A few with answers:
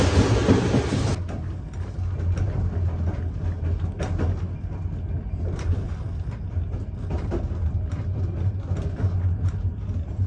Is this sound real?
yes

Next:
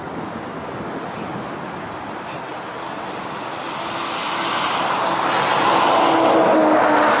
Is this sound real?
yes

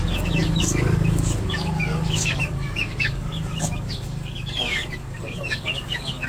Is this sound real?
no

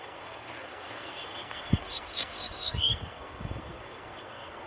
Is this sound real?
no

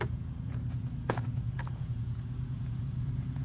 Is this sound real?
no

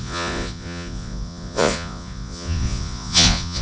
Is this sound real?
no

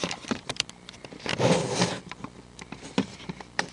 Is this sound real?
no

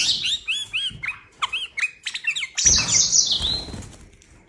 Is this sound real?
yes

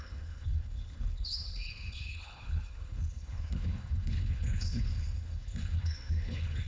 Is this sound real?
no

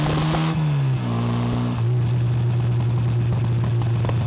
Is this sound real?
yes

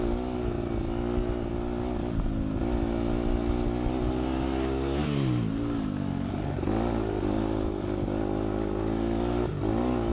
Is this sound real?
yes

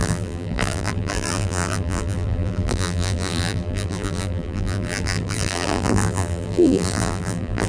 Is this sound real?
no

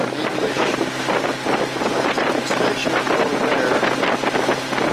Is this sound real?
yes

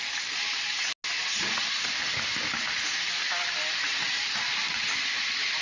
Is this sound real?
yes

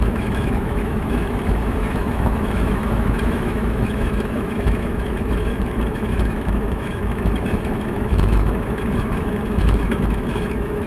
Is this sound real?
no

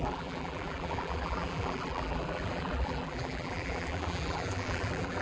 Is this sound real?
no